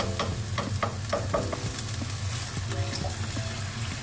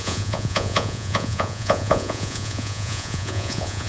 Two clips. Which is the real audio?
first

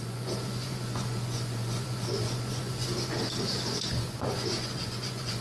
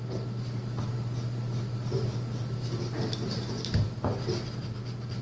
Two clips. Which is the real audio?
second